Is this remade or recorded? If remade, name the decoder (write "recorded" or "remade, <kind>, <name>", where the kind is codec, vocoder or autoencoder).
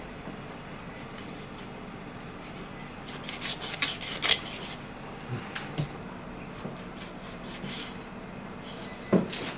recorded